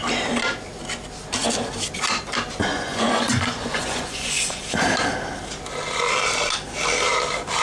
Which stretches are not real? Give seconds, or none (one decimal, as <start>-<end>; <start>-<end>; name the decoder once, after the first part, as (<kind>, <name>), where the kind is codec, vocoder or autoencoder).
2.7-4.6 (vocoder, Vocos)